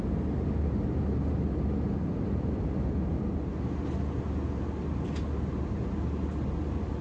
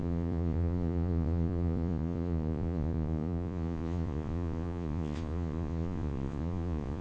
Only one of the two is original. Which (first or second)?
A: first